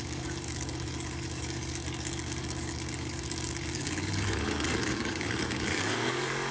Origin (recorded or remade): remade